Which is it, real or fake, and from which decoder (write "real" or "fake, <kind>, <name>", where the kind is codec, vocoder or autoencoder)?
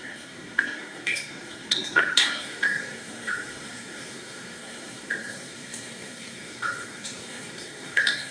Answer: fake, codec, SNAC